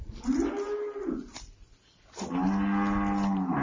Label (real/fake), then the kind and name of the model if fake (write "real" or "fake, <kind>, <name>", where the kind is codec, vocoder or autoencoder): real